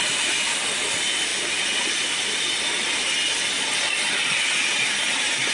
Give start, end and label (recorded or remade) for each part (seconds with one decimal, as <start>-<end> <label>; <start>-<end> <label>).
0.0-5.5 recorded